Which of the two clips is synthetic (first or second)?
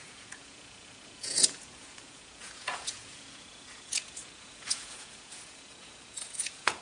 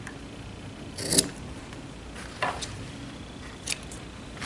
first